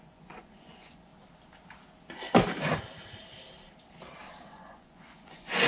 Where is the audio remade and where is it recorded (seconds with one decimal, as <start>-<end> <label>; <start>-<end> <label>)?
0.0-1.1 remade; 1.1-4.5 recorded; 4.5-5.7 remade